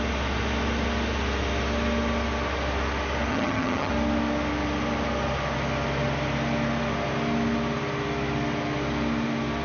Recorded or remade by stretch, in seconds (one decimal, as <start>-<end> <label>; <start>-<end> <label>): 0.0-3.3 recorded; 3.3-3.9 remade; 3.9-9.6 recorded